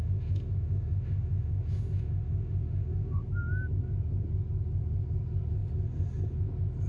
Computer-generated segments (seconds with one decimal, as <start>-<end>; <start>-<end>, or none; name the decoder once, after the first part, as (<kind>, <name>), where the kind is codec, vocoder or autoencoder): 0.0-3.2 (autoencoder, DAC-VAE)